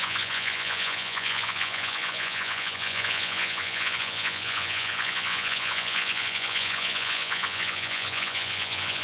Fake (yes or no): yes